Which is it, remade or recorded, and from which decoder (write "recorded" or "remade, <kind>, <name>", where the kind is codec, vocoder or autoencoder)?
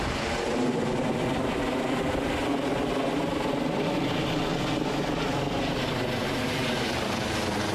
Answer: recorded